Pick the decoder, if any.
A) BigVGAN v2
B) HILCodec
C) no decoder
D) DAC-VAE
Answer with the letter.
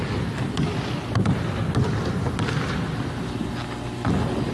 C